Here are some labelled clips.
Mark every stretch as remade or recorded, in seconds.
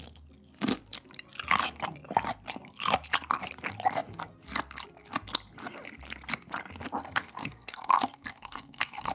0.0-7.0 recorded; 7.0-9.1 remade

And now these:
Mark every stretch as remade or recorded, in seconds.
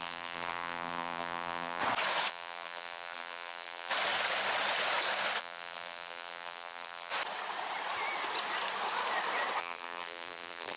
0.0-1.8 remade; 1.8-2.3 recorded; 2.3-3.9 remade; 3.9-5.4 recorded; 5.4-7.1 remade; 7.1-9.6 recorded; 9.6-10.8 remade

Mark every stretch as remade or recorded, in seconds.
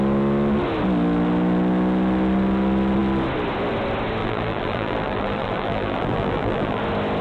0.0-4.2 recorded; 4.2-6.8 remade; 6.8-7.2 recorded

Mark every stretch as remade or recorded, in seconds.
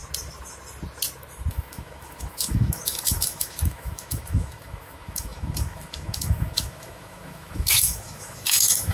0.0-1.5 recorded; 1.5-8.9 remade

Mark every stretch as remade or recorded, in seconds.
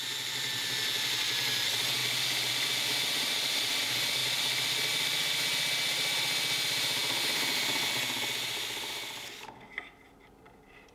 0.0-10.9 recorded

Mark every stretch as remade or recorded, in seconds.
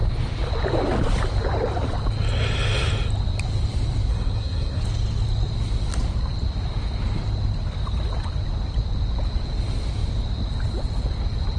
0.0-4.1 recorded; 4.1-4.8 remade; 4.8-11.6 recorded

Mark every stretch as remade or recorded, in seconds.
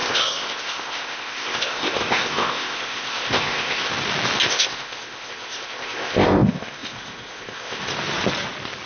0.0-3.9 remade; 3.9-4.5 recorded; 4.5-7.9 remade; 7.9-8.9 recorded